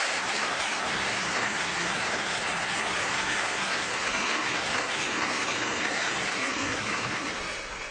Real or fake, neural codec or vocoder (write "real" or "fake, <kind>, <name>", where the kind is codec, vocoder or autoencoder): fake, codec, SNAC